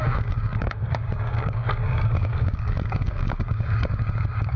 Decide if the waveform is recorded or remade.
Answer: remade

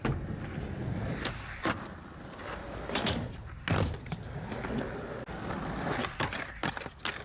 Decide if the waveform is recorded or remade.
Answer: recorded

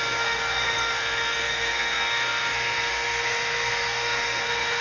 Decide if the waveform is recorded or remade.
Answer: remade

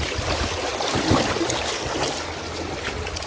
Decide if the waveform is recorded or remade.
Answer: recorded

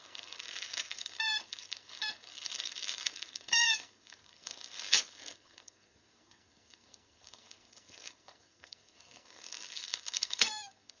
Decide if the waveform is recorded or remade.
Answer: remade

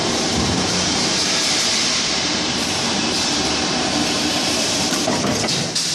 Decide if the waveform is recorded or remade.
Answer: remade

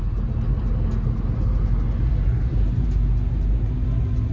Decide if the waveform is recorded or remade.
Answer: recorded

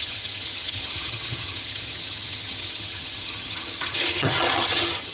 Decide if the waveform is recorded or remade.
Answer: remade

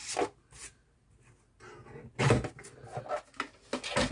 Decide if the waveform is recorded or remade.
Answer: recorded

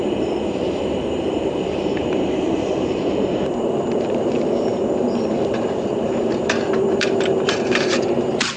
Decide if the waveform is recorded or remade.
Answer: remade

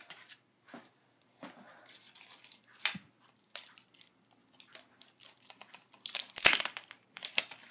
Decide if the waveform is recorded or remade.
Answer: remade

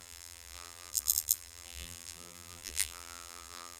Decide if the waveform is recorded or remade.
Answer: remade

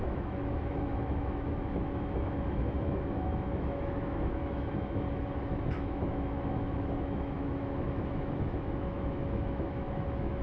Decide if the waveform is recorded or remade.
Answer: remade